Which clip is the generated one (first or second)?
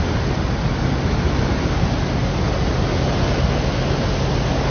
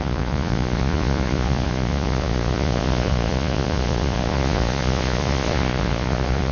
second